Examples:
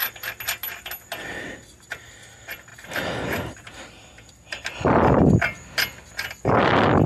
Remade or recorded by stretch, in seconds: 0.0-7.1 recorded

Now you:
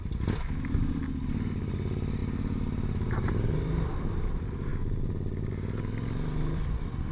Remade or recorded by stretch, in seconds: 0.0-7.1 recorded

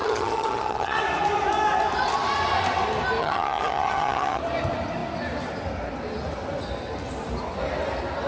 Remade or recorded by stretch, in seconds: 0.0-1.0 remade; 1.0-3.2 recorded; 3.2-4.4 remade; 4.4-8.3 recorded

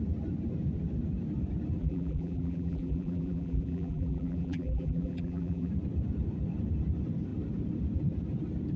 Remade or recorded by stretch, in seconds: 0.0-1.8 recorded; 1.8-5.7 remade; 5.7-8.8 recorded